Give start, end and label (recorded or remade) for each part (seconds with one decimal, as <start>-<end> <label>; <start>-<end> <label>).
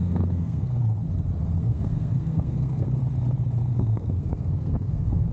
0.0-0.8 remade; 0.8-1.6 recorded; 1.6-3.0 remade; 3.0-3.7 recorded; 3.7-5.3 remade